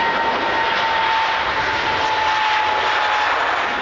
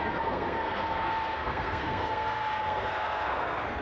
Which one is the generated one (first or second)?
second